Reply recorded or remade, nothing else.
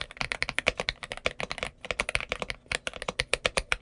recorded